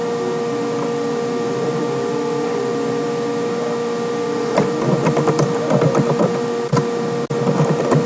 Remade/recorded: recorded